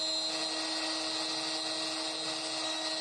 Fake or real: real